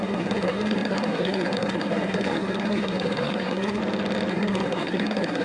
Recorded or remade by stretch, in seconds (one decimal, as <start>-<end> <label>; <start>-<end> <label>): 0.0-3.8 remade; 3.8-4.3 recorded; 4.3-5.4 remade